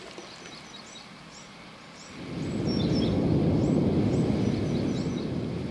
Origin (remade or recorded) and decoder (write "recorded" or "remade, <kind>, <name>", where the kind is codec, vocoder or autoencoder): recorded